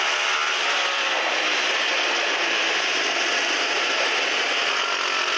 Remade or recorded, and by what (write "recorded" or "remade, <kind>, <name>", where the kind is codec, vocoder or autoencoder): recorded